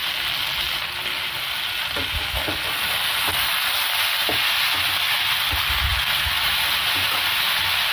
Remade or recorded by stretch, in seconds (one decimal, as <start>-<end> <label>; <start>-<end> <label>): 0.0-7.9 recorded